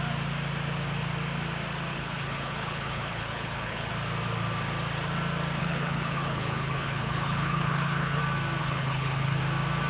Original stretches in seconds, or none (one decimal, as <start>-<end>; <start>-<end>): 0.0-1.9; 3.9-5.6; 8.2-8.6; 9.4-9.9